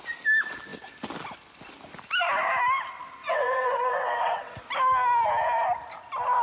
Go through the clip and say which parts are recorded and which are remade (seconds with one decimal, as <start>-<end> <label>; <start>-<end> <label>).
0.0-3.2 recorded; 3.2-4.6 remade; 4.6-6.4 recorded